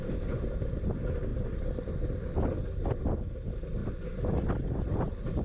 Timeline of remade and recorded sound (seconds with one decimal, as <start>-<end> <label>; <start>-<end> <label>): 0.0-1.3 recorded; 1.3-1.8 remade; 1.8-5.4 recorded